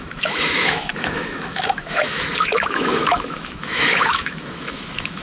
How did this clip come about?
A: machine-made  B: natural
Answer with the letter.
A